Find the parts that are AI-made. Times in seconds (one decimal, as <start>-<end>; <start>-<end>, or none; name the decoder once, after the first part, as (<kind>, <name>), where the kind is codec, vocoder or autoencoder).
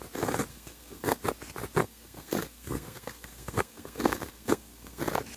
0.5-1.2 (codec, SNAC); 1.8-5.0